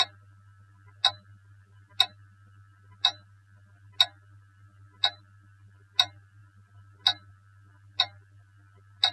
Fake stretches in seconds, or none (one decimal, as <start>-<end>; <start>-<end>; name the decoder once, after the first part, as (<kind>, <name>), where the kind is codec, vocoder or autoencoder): none